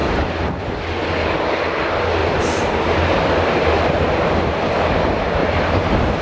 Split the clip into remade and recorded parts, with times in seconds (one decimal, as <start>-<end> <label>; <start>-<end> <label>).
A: 0.0-2.2 recorded; 2.2-4.1 remade; 4.1-5.4 recorded; 5.4-6.2 remade